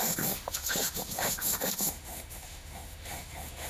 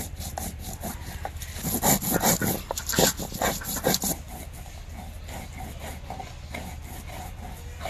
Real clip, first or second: second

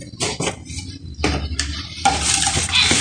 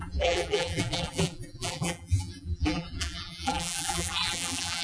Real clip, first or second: first